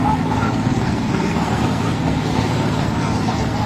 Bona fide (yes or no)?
no